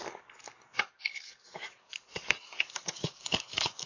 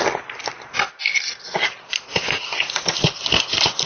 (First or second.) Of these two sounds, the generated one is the first